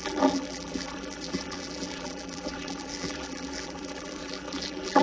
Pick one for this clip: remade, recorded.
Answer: remade